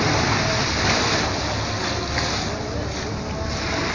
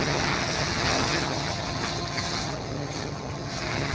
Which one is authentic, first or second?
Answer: first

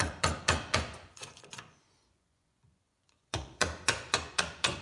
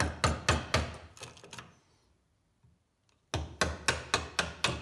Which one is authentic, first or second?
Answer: second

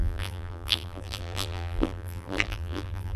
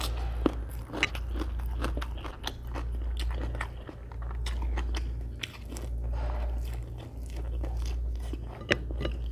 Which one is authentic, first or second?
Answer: second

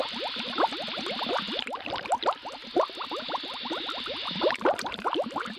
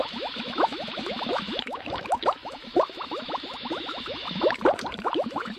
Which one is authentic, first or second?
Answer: first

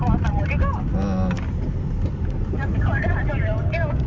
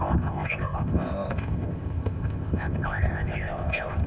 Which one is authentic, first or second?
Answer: first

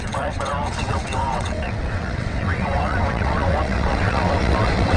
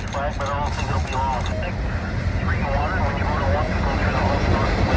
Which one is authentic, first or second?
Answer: second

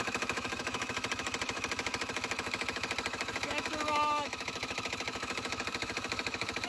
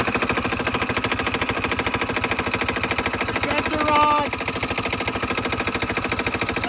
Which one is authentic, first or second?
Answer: second